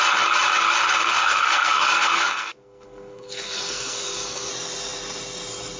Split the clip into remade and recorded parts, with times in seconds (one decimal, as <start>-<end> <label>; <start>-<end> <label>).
0.0-1.0 recorded; 1.0-4.5 remade; 4.5-5.8 recorded